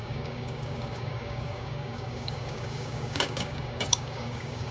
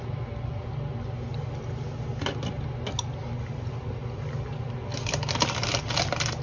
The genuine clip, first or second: second